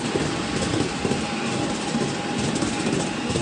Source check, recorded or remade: recorded